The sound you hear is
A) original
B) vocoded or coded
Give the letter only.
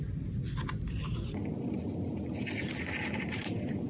A